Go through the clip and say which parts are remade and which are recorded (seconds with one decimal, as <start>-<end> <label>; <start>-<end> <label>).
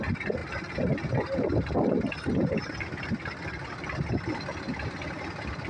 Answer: 0.0-5.7 recorded